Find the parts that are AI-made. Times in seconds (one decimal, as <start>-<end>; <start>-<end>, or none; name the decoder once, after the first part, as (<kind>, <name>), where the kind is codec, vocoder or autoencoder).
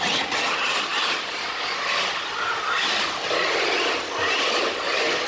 none